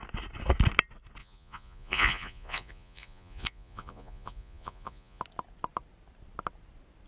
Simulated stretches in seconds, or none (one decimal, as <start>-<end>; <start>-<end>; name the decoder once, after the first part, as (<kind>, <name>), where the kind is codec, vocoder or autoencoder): 1.2-5.2 (vocoder, Vocos)